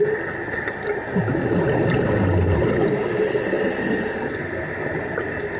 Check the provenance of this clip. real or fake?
real